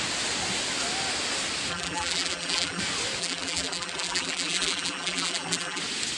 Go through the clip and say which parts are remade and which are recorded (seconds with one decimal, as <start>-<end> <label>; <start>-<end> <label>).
0.0-1.7 recorded; 1.7-2.8 remade; 2.8-3.2 recorded; 3.2-5.8 remade; 5.8-6.2 recorded